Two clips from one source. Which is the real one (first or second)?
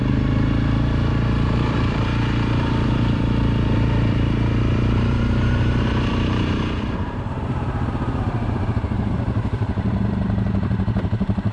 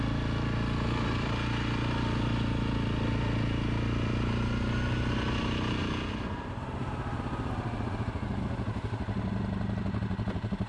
second